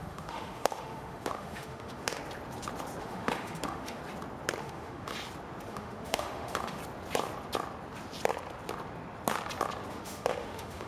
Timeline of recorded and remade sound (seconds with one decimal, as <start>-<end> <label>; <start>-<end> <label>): 0.0-2.2 remade; 2.2-3.0 recorded; 3.0-4.0 remade; 4.0-4.6 recorded; 4.6-5.1 remade; 5.1-5.7 recorded; 5.7-6.8 remade; 6.8-9.9 recorded; 9.9-10.9 remade